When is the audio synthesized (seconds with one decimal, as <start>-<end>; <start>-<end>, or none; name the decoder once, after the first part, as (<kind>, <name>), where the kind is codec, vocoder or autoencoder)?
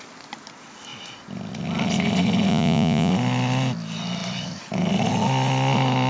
2.5-3.1 (vocoder, Vocos)